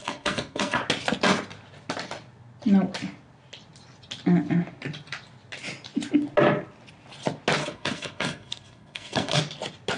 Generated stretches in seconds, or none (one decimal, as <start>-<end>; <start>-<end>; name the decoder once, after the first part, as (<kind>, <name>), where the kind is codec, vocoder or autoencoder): 0.0-0.8 (codec, SNAC); 7.6-9.4